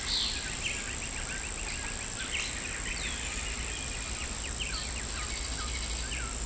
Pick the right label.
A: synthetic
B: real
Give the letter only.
B